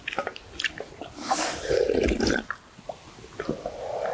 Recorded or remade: recorded